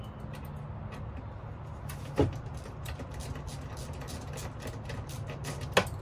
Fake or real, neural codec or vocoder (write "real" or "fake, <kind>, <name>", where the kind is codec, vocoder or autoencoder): real